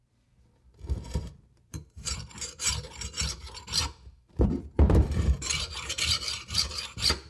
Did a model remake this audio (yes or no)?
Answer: yes